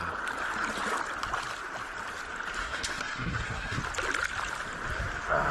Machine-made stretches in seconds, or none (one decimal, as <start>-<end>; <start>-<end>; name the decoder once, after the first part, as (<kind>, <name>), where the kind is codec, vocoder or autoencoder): 2.6-3.8 (codec, SNAC)